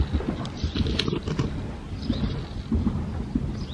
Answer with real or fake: real